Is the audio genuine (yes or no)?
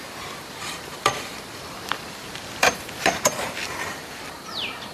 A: no